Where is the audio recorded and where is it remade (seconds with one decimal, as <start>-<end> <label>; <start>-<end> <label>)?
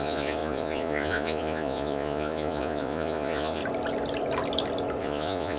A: 0.0-3.6 remade; 3.6-5.0 recorded; 5.0-5.6 remade